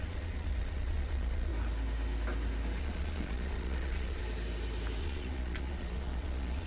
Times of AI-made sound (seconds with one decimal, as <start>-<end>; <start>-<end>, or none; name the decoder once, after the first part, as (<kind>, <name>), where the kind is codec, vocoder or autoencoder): 0.0-1.5 (vocoder, Vocos); 2.8-4.2; 5.0-6.7